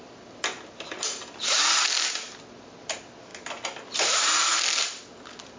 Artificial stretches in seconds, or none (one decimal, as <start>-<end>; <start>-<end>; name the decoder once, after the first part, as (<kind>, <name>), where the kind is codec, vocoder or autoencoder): none

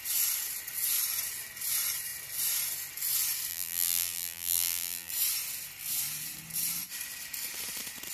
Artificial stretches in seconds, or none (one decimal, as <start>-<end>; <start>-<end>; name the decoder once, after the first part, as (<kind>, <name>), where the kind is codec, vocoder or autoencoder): 3.5-5.1 (vocoder, BigVGAN v2)

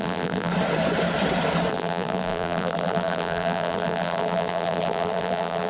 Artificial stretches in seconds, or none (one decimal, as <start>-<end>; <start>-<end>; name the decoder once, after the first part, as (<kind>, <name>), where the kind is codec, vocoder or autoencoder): 0.0-0.5 (vocoder, BigVGAN v2); 1.7-5.7

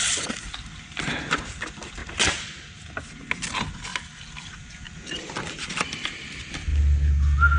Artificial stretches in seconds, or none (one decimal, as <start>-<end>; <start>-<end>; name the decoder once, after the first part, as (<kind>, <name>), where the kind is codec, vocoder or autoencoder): 0.0-2.0 (vocoder, BigVGAN v2); 3.5-6.7

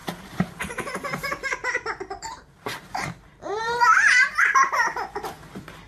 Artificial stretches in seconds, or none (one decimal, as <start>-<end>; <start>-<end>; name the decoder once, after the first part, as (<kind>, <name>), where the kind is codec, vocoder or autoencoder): 0.0-5.9 (vocoder, BigVGAN v2)

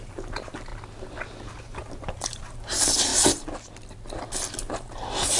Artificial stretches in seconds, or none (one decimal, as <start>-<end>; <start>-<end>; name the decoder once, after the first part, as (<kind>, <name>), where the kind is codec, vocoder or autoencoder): 0.0-0.7 (vocoder, BigVGAN v2); 1.6-3.1; 4.4-5.4